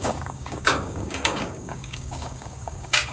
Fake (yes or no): yes